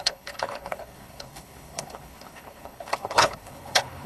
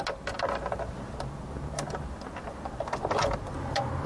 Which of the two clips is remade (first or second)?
first